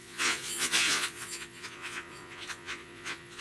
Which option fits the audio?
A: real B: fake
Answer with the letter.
B